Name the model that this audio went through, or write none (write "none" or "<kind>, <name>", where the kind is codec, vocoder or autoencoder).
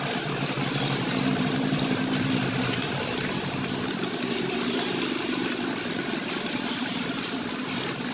none